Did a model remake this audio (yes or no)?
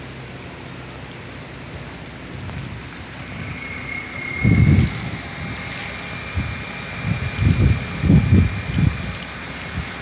no